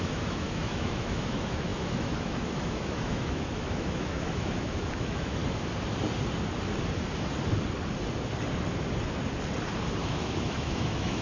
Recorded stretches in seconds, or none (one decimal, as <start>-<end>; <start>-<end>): 5.4-10.0